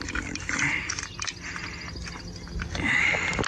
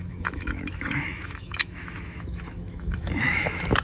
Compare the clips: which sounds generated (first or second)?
second